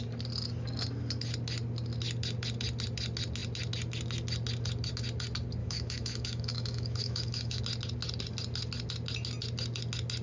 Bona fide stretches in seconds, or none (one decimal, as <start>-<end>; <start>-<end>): 0.0-5.6; 7.6-10.2